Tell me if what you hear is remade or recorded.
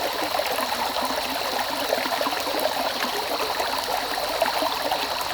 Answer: recorded